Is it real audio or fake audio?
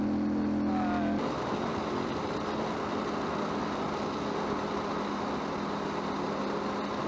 real